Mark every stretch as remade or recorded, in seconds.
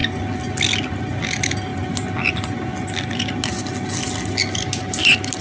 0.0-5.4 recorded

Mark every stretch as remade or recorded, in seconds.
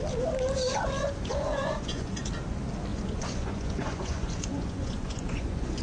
0.0-1.0 recorded; 1.0-2.3 remade; 2.3-2.9 recorded; 2.9-5.8 remade